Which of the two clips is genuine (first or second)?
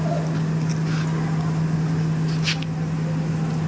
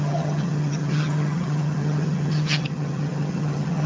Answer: first